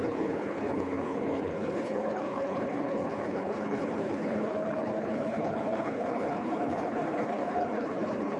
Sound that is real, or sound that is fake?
fake